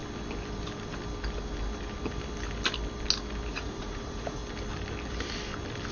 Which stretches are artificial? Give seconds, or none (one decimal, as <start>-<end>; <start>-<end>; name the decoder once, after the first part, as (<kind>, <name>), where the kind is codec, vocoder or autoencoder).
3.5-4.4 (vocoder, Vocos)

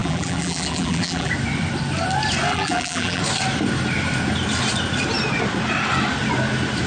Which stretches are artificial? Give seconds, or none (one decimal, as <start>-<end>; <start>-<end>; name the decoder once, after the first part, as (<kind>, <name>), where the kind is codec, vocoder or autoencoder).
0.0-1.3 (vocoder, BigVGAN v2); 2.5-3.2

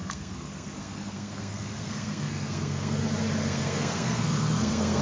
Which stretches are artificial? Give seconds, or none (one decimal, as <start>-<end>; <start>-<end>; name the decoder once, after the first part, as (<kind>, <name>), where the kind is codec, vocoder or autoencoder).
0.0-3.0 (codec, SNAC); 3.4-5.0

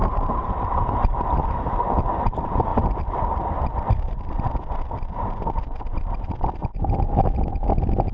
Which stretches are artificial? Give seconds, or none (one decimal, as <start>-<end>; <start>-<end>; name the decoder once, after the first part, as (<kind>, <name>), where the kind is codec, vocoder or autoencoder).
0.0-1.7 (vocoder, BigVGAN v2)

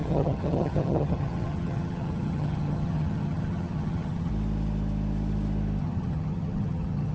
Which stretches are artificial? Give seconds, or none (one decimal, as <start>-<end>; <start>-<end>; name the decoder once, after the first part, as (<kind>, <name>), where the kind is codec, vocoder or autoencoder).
0.0-4.3 (vocoder, HiFi-GAN); 5.8-7.1

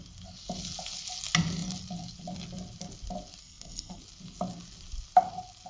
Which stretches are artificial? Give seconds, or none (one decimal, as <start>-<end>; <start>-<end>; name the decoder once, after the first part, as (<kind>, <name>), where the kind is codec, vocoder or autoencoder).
3.4-4.0 (codec, SNAC)

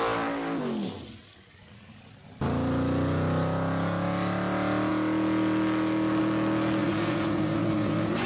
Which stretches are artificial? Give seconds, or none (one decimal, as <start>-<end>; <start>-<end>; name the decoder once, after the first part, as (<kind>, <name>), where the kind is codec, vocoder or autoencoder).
6.8-8.3 (vocoder, Vocos)